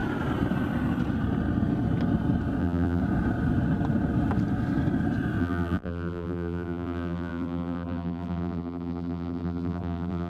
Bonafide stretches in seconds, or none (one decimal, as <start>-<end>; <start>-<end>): 0.0-2.6; 3.0-5.4